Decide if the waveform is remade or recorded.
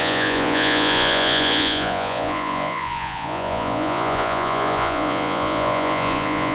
remade